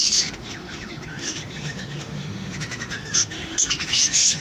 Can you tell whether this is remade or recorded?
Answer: remade